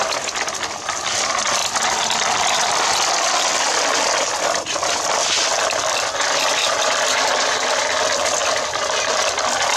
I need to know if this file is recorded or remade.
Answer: recorded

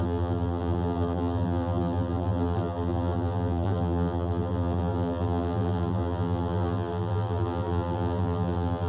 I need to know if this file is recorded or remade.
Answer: remade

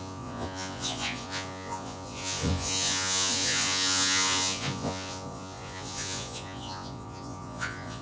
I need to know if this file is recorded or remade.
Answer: remade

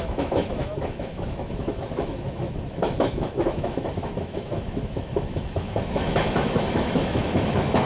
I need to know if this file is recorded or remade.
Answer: remade